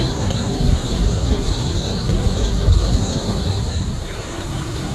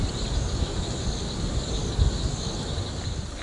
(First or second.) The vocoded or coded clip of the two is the first